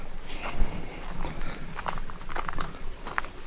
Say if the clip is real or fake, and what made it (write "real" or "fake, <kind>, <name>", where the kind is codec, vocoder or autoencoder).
real